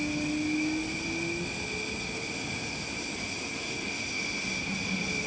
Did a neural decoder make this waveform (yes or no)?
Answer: no